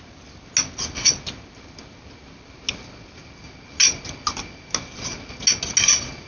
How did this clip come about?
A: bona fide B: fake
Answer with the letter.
A